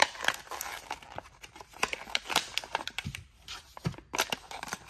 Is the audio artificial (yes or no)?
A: yes